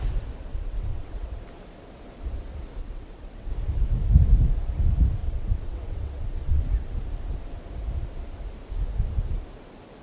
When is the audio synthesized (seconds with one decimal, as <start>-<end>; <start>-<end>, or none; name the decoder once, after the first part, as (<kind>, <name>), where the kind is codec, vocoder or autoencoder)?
0.5-1.4 (vocoder, WaveNeXt); 2.8-3.5; 5.2-6.6